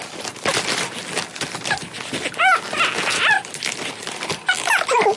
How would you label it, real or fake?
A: real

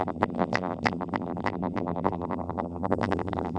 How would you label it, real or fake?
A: fake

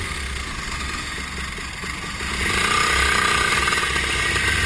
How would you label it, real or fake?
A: real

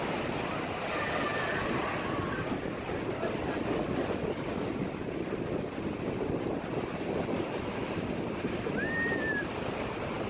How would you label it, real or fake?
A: real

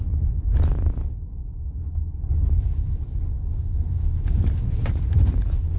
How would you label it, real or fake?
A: real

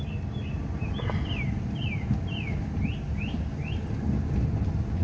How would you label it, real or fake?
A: real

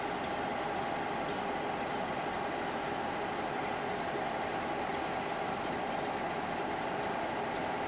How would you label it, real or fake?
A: real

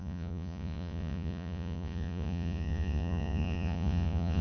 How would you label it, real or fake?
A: fake